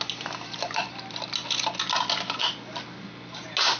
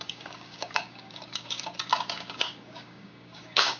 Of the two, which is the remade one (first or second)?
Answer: second